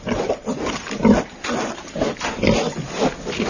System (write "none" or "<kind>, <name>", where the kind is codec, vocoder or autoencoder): none